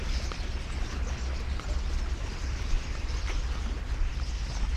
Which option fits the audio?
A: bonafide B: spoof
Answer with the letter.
A